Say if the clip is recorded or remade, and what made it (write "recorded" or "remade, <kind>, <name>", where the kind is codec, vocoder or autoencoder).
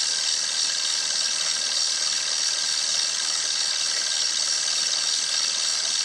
remade, codec, HILCodec